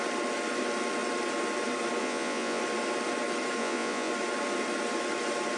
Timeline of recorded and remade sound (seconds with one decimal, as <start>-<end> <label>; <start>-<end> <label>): 0.0-2.0 recorded; 2.0-2.6 remade; 2.6-3.6 recorded; 3.6-4.1 remade; 4.1-5.6 recorded

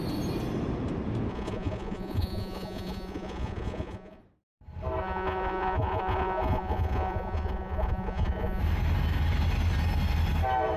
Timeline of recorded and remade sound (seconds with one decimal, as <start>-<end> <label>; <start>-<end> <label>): 0.0-1.3 recorded; 1.3-4.2 remade; 4.2-5.0 recorded; 5.0-8.6 remade; 8.6-10.8 recorded

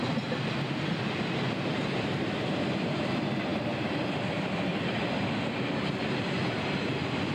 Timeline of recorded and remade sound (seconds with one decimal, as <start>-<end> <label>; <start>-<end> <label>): 0.0-7.3 recorded

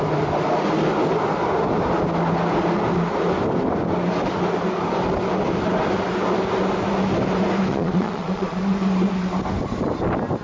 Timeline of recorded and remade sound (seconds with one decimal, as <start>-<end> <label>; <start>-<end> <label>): 0.0-7.7 recorded; 7.7-8.6 remade; 8.6-10.4 recorded

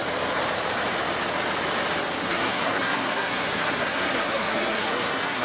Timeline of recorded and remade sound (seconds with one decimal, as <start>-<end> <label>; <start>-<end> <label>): 0.0-2.2 recorded; 2.2-5.4 remade

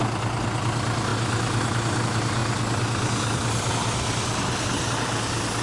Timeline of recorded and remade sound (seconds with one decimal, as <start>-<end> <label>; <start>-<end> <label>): 0.0-5.6 recorded

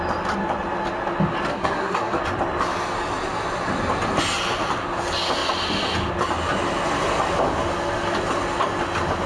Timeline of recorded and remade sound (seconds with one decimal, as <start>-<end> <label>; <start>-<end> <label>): 0.0-1.5 recorded; 1.5-2.2 remade; 2.2-9.3 recorded